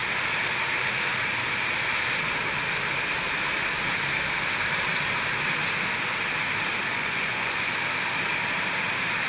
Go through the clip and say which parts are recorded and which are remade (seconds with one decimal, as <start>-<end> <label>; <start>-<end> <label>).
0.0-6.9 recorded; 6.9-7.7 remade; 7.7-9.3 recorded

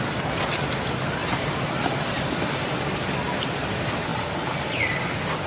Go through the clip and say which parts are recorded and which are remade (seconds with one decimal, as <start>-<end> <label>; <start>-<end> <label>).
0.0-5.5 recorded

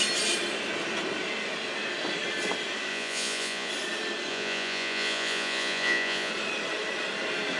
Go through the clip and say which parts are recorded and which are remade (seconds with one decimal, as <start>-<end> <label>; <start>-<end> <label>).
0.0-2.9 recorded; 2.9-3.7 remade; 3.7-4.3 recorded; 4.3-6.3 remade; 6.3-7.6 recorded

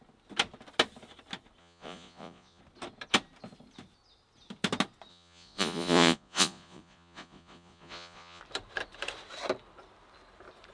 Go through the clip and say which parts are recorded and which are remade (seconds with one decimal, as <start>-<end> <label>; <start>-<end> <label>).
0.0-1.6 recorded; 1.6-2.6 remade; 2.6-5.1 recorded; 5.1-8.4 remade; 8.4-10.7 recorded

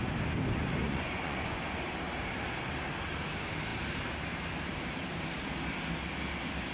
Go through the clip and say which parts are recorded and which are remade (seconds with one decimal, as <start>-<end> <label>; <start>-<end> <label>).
0.0-0.8 recorded; 0.8-1.6 remade; 1.6-6.7 recorded

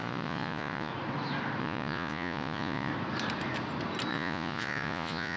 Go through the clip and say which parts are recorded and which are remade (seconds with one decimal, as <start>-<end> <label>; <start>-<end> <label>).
0.0-0.9 remade; 0.9-1.6 recorded; 1.6-2.9 remade; 2.9-4.1 recorded; 4.1-5.4 remade

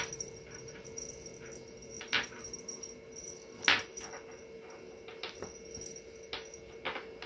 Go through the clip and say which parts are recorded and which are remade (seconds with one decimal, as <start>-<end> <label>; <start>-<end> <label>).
0.0-7.3 recorded

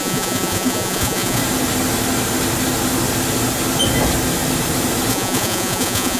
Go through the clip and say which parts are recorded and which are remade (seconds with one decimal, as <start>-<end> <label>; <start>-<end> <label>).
0.0-1.4 remade; 1.4-5.1 recorded; 5.1-6.2 remade